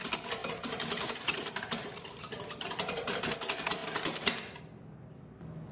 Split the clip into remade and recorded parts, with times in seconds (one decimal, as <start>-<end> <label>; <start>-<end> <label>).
0.0-0.4 recorded; 0.4-3.2 remade; 3.2-5.7 recorded